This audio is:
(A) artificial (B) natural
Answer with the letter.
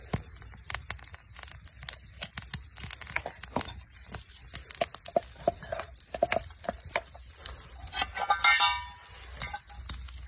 B